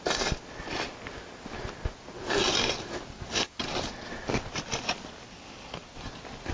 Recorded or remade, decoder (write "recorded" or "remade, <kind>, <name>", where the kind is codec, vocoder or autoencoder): recorded